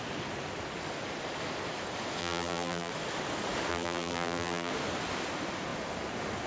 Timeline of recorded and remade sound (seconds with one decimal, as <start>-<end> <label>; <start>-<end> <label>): 0.0-2.2 recorded; 2.2-2.9 remade; 2.9-3.7 recorded; 3.7-4.7 remade; 4.7-6.5 recorded